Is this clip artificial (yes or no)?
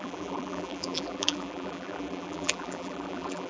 yes